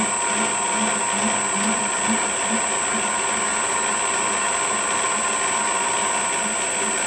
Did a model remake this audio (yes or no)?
no